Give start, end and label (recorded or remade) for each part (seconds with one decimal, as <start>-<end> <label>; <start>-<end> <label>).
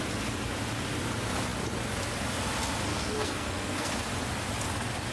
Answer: 0.0-2.9 recorded; 2.9-3.9 remade; 3.9-5.1 recorded